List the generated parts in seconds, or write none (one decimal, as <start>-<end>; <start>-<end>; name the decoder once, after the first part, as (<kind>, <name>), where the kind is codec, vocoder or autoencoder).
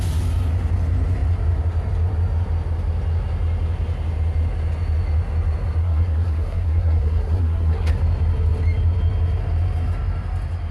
5.8-7.9 (codec, SNAC)